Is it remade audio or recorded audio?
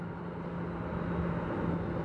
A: recorded